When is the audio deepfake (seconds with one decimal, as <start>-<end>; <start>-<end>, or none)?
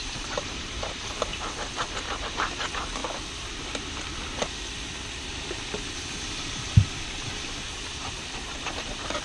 0.0-1.3; 2.0-3.0; 5.7-9.2